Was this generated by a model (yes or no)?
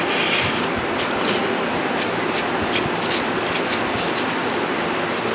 no